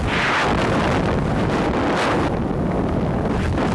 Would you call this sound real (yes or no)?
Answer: yes